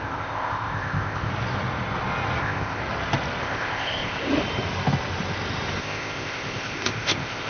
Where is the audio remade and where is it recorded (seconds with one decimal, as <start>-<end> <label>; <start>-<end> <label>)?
0.0-1.3 remade; 1.3-2.4 recorded; 2.4-2.8 remade; 2.8-3.4 recorded; 3.4-4.3 remade; 4.3-5.8 recorded; 5.8-7.5 remade